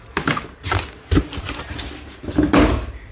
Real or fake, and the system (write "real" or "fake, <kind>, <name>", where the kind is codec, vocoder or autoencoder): fake, vocoder, BigVGAN v2